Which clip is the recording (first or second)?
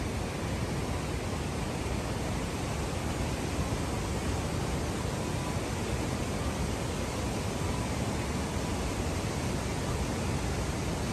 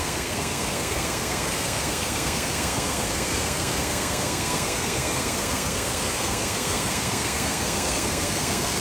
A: first